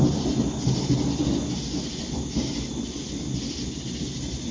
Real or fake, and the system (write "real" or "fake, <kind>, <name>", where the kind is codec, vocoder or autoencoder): real